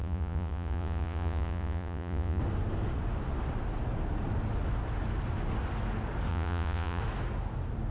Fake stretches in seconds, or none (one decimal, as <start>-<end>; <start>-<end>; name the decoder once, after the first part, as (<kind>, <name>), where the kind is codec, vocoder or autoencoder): 0.0-2.4 (vocoder, Vocos); 6.3-7.0

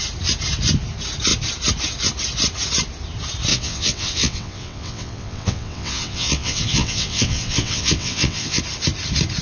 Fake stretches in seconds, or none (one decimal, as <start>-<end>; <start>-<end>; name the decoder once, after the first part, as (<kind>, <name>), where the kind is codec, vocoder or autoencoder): 3.5-8.6 (vocoder, WaveNeXt)

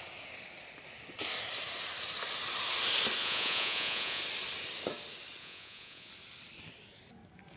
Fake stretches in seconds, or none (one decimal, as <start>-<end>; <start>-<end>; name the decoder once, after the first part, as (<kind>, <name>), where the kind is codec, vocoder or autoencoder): 3.2-4.2 (vocoder, Vocos); 5.4-6.1